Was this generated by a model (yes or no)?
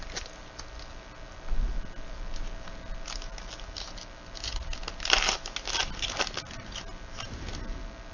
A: no